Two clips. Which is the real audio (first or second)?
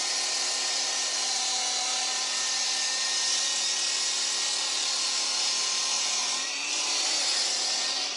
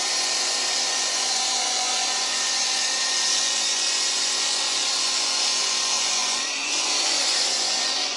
first